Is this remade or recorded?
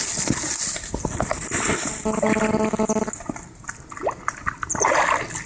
recorded